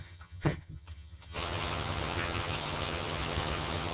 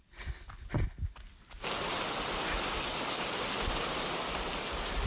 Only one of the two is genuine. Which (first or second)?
second